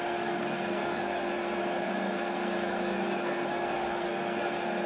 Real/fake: fake